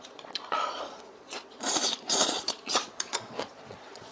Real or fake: fake